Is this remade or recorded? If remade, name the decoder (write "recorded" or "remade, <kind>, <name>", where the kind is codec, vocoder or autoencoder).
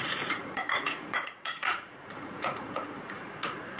remade, vocoder, Vocos